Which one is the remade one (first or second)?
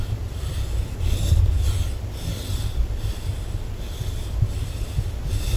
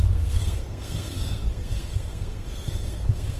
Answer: second